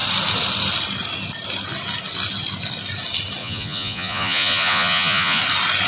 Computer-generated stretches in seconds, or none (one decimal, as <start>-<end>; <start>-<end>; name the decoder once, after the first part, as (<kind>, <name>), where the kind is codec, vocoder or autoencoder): 3.4-5.4 (vocoder, Vocos)